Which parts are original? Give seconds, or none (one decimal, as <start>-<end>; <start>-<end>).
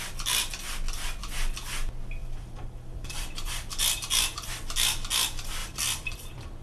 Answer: 0.0-2.2; 4.5-5.6